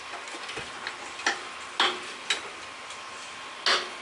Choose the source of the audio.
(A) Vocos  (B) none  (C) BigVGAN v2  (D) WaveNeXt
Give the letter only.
B